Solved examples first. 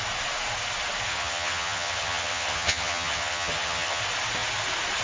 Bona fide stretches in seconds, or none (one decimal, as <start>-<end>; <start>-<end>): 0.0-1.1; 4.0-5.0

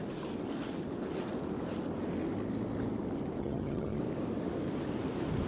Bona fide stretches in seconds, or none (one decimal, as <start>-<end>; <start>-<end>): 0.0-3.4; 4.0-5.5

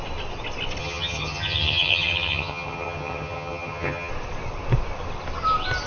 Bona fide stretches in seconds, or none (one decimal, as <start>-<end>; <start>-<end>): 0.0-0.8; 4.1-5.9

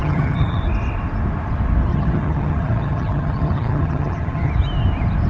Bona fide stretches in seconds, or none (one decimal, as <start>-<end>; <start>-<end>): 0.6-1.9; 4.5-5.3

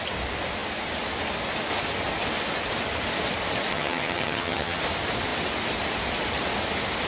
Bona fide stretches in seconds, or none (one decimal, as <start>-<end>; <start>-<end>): 0.0-3.7; 4.8-7.1